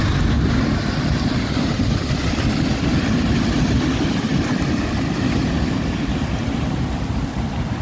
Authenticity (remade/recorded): recorded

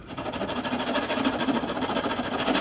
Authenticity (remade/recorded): recorded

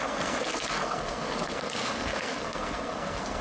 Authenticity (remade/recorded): remade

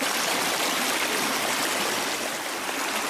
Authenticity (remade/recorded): recorded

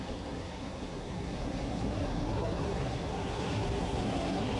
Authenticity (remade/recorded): remade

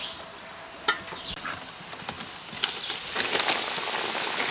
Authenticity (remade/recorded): recorded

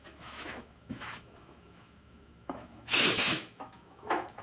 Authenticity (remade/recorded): remade